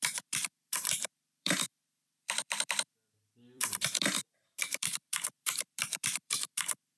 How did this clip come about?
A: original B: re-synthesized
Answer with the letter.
B